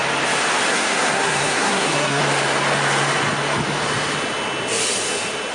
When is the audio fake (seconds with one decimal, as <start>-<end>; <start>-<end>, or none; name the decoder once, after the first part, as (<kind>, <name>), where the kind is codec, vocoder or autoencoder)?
0.7-2.2 (codec, SNAC)